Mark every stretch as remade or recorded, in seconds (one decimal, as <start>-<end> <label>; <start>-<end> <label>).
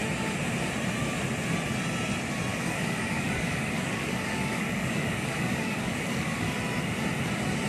0.0-2.5 recorded; 2.5-6.6 remade; 6.6-7.7 recorded